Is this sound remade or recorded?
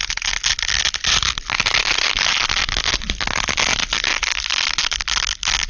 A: recorded